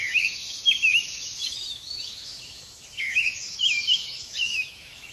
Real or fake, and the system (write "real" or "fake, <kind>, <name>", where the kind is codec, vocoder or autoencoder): fake, autoencoder, DAC-VAE